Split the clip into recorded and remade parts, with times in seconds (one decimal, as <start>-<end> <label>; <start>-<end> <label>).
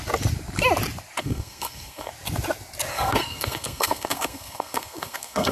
0.0-1.2 recorded; 1.2-2.1 remade; 2.1-2.9 recorded; 2.9-5.5 remade